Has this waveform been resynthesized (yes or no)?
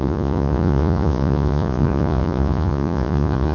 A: yes